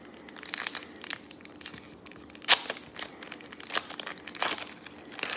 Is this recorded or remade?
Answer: recorded